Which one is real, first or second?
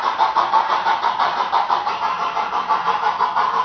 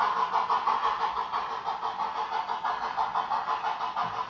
second